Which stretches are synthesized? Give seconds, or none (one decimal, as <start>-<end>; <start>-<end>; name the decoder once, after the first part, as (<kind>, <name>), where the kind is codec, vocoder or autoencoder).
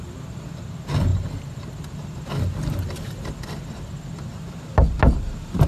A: none